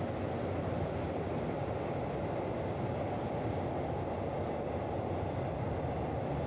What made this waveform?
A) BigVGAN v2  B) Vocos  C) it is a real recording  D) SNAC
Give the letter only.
C